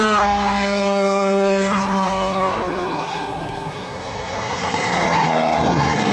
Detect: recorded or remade remade